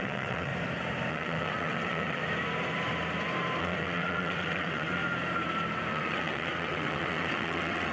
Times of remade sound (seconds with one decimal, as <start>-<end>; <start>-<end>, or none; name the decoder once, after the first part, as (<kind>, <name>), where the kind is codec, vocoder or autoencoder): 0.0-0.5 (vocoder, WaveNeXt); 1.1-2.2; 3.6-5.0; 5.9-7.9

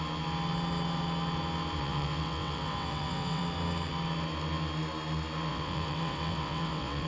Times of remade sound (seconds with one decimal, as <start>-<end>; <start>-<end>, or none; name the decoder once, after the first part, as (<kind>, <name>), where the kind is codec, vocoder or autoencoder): 1.8-3.4 (vocoder, WaveNeXt); 5.5-7.1

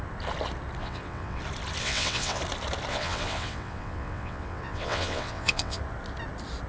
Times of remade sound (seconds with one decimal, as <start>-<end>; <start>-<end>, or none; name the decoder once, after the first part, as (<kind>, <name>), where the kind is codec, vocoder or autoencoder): 0.8-1.4 (vocoder, WaveNeXt); 1.8-2.4; 2.9-5.8

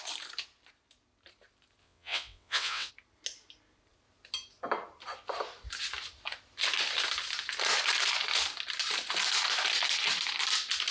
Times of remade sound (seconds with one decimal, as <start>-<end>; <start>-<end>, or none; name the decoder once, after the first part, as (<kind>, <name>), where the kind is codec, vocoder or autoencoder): 1.8-2.9 (vocoder, WaveNeXt)